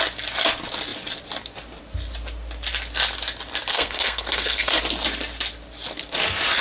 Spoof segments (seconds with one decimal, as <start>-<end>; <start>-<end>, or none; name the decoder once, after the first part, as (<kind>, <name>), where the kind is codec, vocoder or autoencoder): 3.7-4.8 (codec, SNAC)